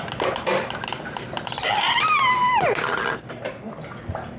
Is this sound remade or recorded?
recorded